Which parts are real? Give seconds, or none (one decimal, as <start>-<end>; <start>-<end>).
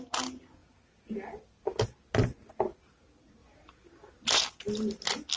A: 0.0-5.4